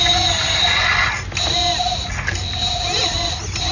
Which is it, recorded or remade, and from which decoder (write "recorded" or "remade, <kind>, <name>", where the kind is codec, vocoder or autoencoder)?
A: recorded